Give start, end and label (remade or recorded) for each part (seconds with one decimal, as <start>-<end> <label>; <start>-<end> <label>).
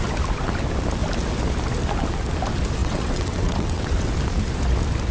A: 0.0-2.8 recorded; 2.8-4.1 remade; 4.1-5.1 recorded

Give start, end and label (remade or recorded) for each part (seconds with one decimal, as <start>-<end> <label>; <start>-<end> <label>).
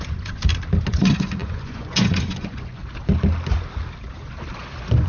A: 0.0-0.4 remade; 0.4-0.9 recorded; 0.9-2.8 remade; 2.8-5.1 recorded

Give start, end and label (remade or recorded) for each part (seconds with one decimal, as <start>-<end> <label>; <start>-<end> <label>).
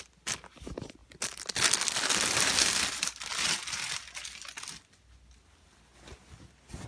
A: 0.0-6.9 recorded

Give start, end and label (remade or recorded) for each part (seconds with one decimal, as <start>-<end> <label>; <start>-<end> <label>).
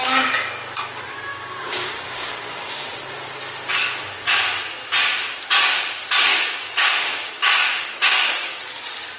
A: 0.0-1.3 recorded; 1.3-3.0 remade; 3.0-6.3 recorded; 6.3-8.6 remade; 8.6-9.2 recorded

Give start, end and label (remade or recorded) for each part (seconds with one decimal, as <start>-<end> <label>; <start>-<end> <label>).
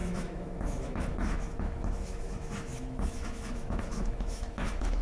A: 0.0-5.0 remade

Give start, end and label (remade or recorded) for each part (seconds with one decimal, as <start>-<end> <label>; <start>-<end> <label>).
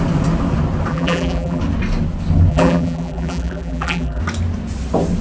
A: 0.0-0.9 recorded; 0.9-1.6 remade; 1.6-2.5 recorded; 2.5-4.2 remade; 4.2-5.2 recorded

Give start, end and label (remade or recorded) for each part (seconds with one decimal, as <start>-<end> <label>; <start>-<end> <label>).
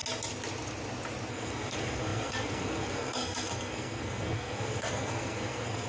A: 0.0-1.3 recorded; 1.3-5.9 remade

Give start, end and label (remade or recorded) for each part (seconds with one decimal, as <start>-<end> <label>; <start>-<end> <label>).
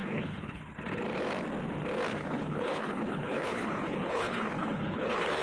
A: 0.0-0.6 remade; 0.6-2.1 recorded; 2.1-5.4 remade